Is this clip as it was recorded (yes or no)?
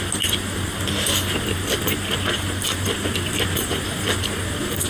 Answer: yes